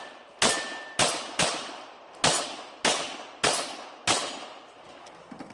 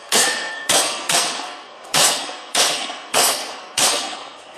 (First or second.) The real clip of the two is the first